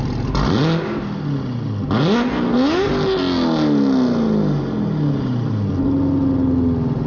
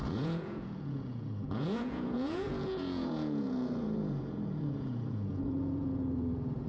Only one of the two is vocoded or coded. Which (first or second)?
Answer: second